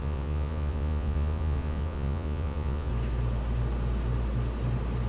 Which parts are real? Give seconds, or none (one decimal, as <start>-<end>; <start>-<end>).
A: 2.9-5.1